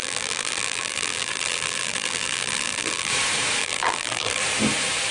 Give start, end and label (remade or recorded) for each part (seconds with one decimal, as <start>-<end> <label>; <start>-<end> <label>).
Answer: 0.0-3.1 remade; 3.1-3.6 recorded; 3.6-4.4 remade; 4.4-5.1 recorded